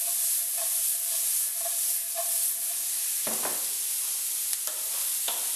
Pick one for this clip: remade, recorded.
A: recorded